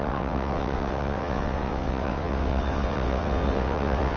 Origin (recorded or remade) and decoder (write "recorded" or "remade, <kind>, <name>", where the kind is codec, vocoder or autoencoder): remade, vocoder, WaveNeXt